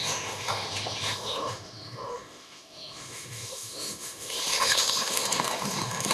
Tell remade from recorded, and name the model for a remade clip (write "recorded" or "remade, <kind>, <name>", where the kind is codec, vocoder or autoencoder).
remade, autoencoder, DAC-VAE